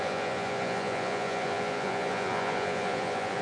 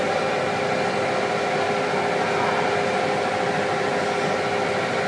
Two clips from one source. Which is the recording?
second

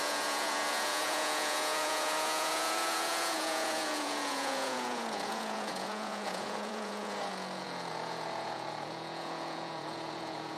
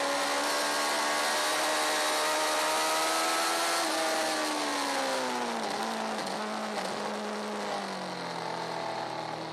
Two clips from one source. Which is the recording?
second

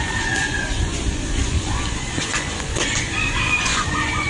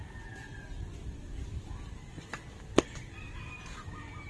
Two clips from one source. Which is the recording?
second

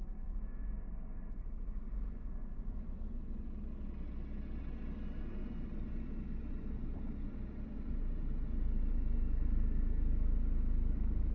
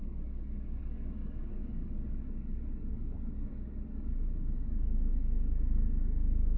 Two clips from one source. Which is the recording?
first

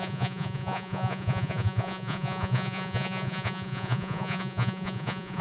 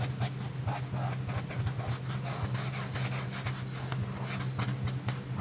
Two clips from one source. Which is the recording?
second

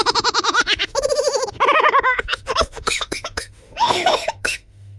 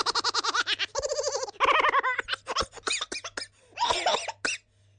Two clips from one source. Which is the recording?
second